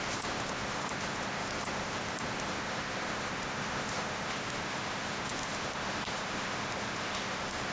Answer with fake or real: fake